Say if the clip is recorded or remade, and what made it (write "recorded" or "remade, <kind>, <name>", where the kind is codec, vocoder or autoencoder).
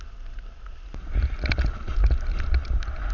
recorded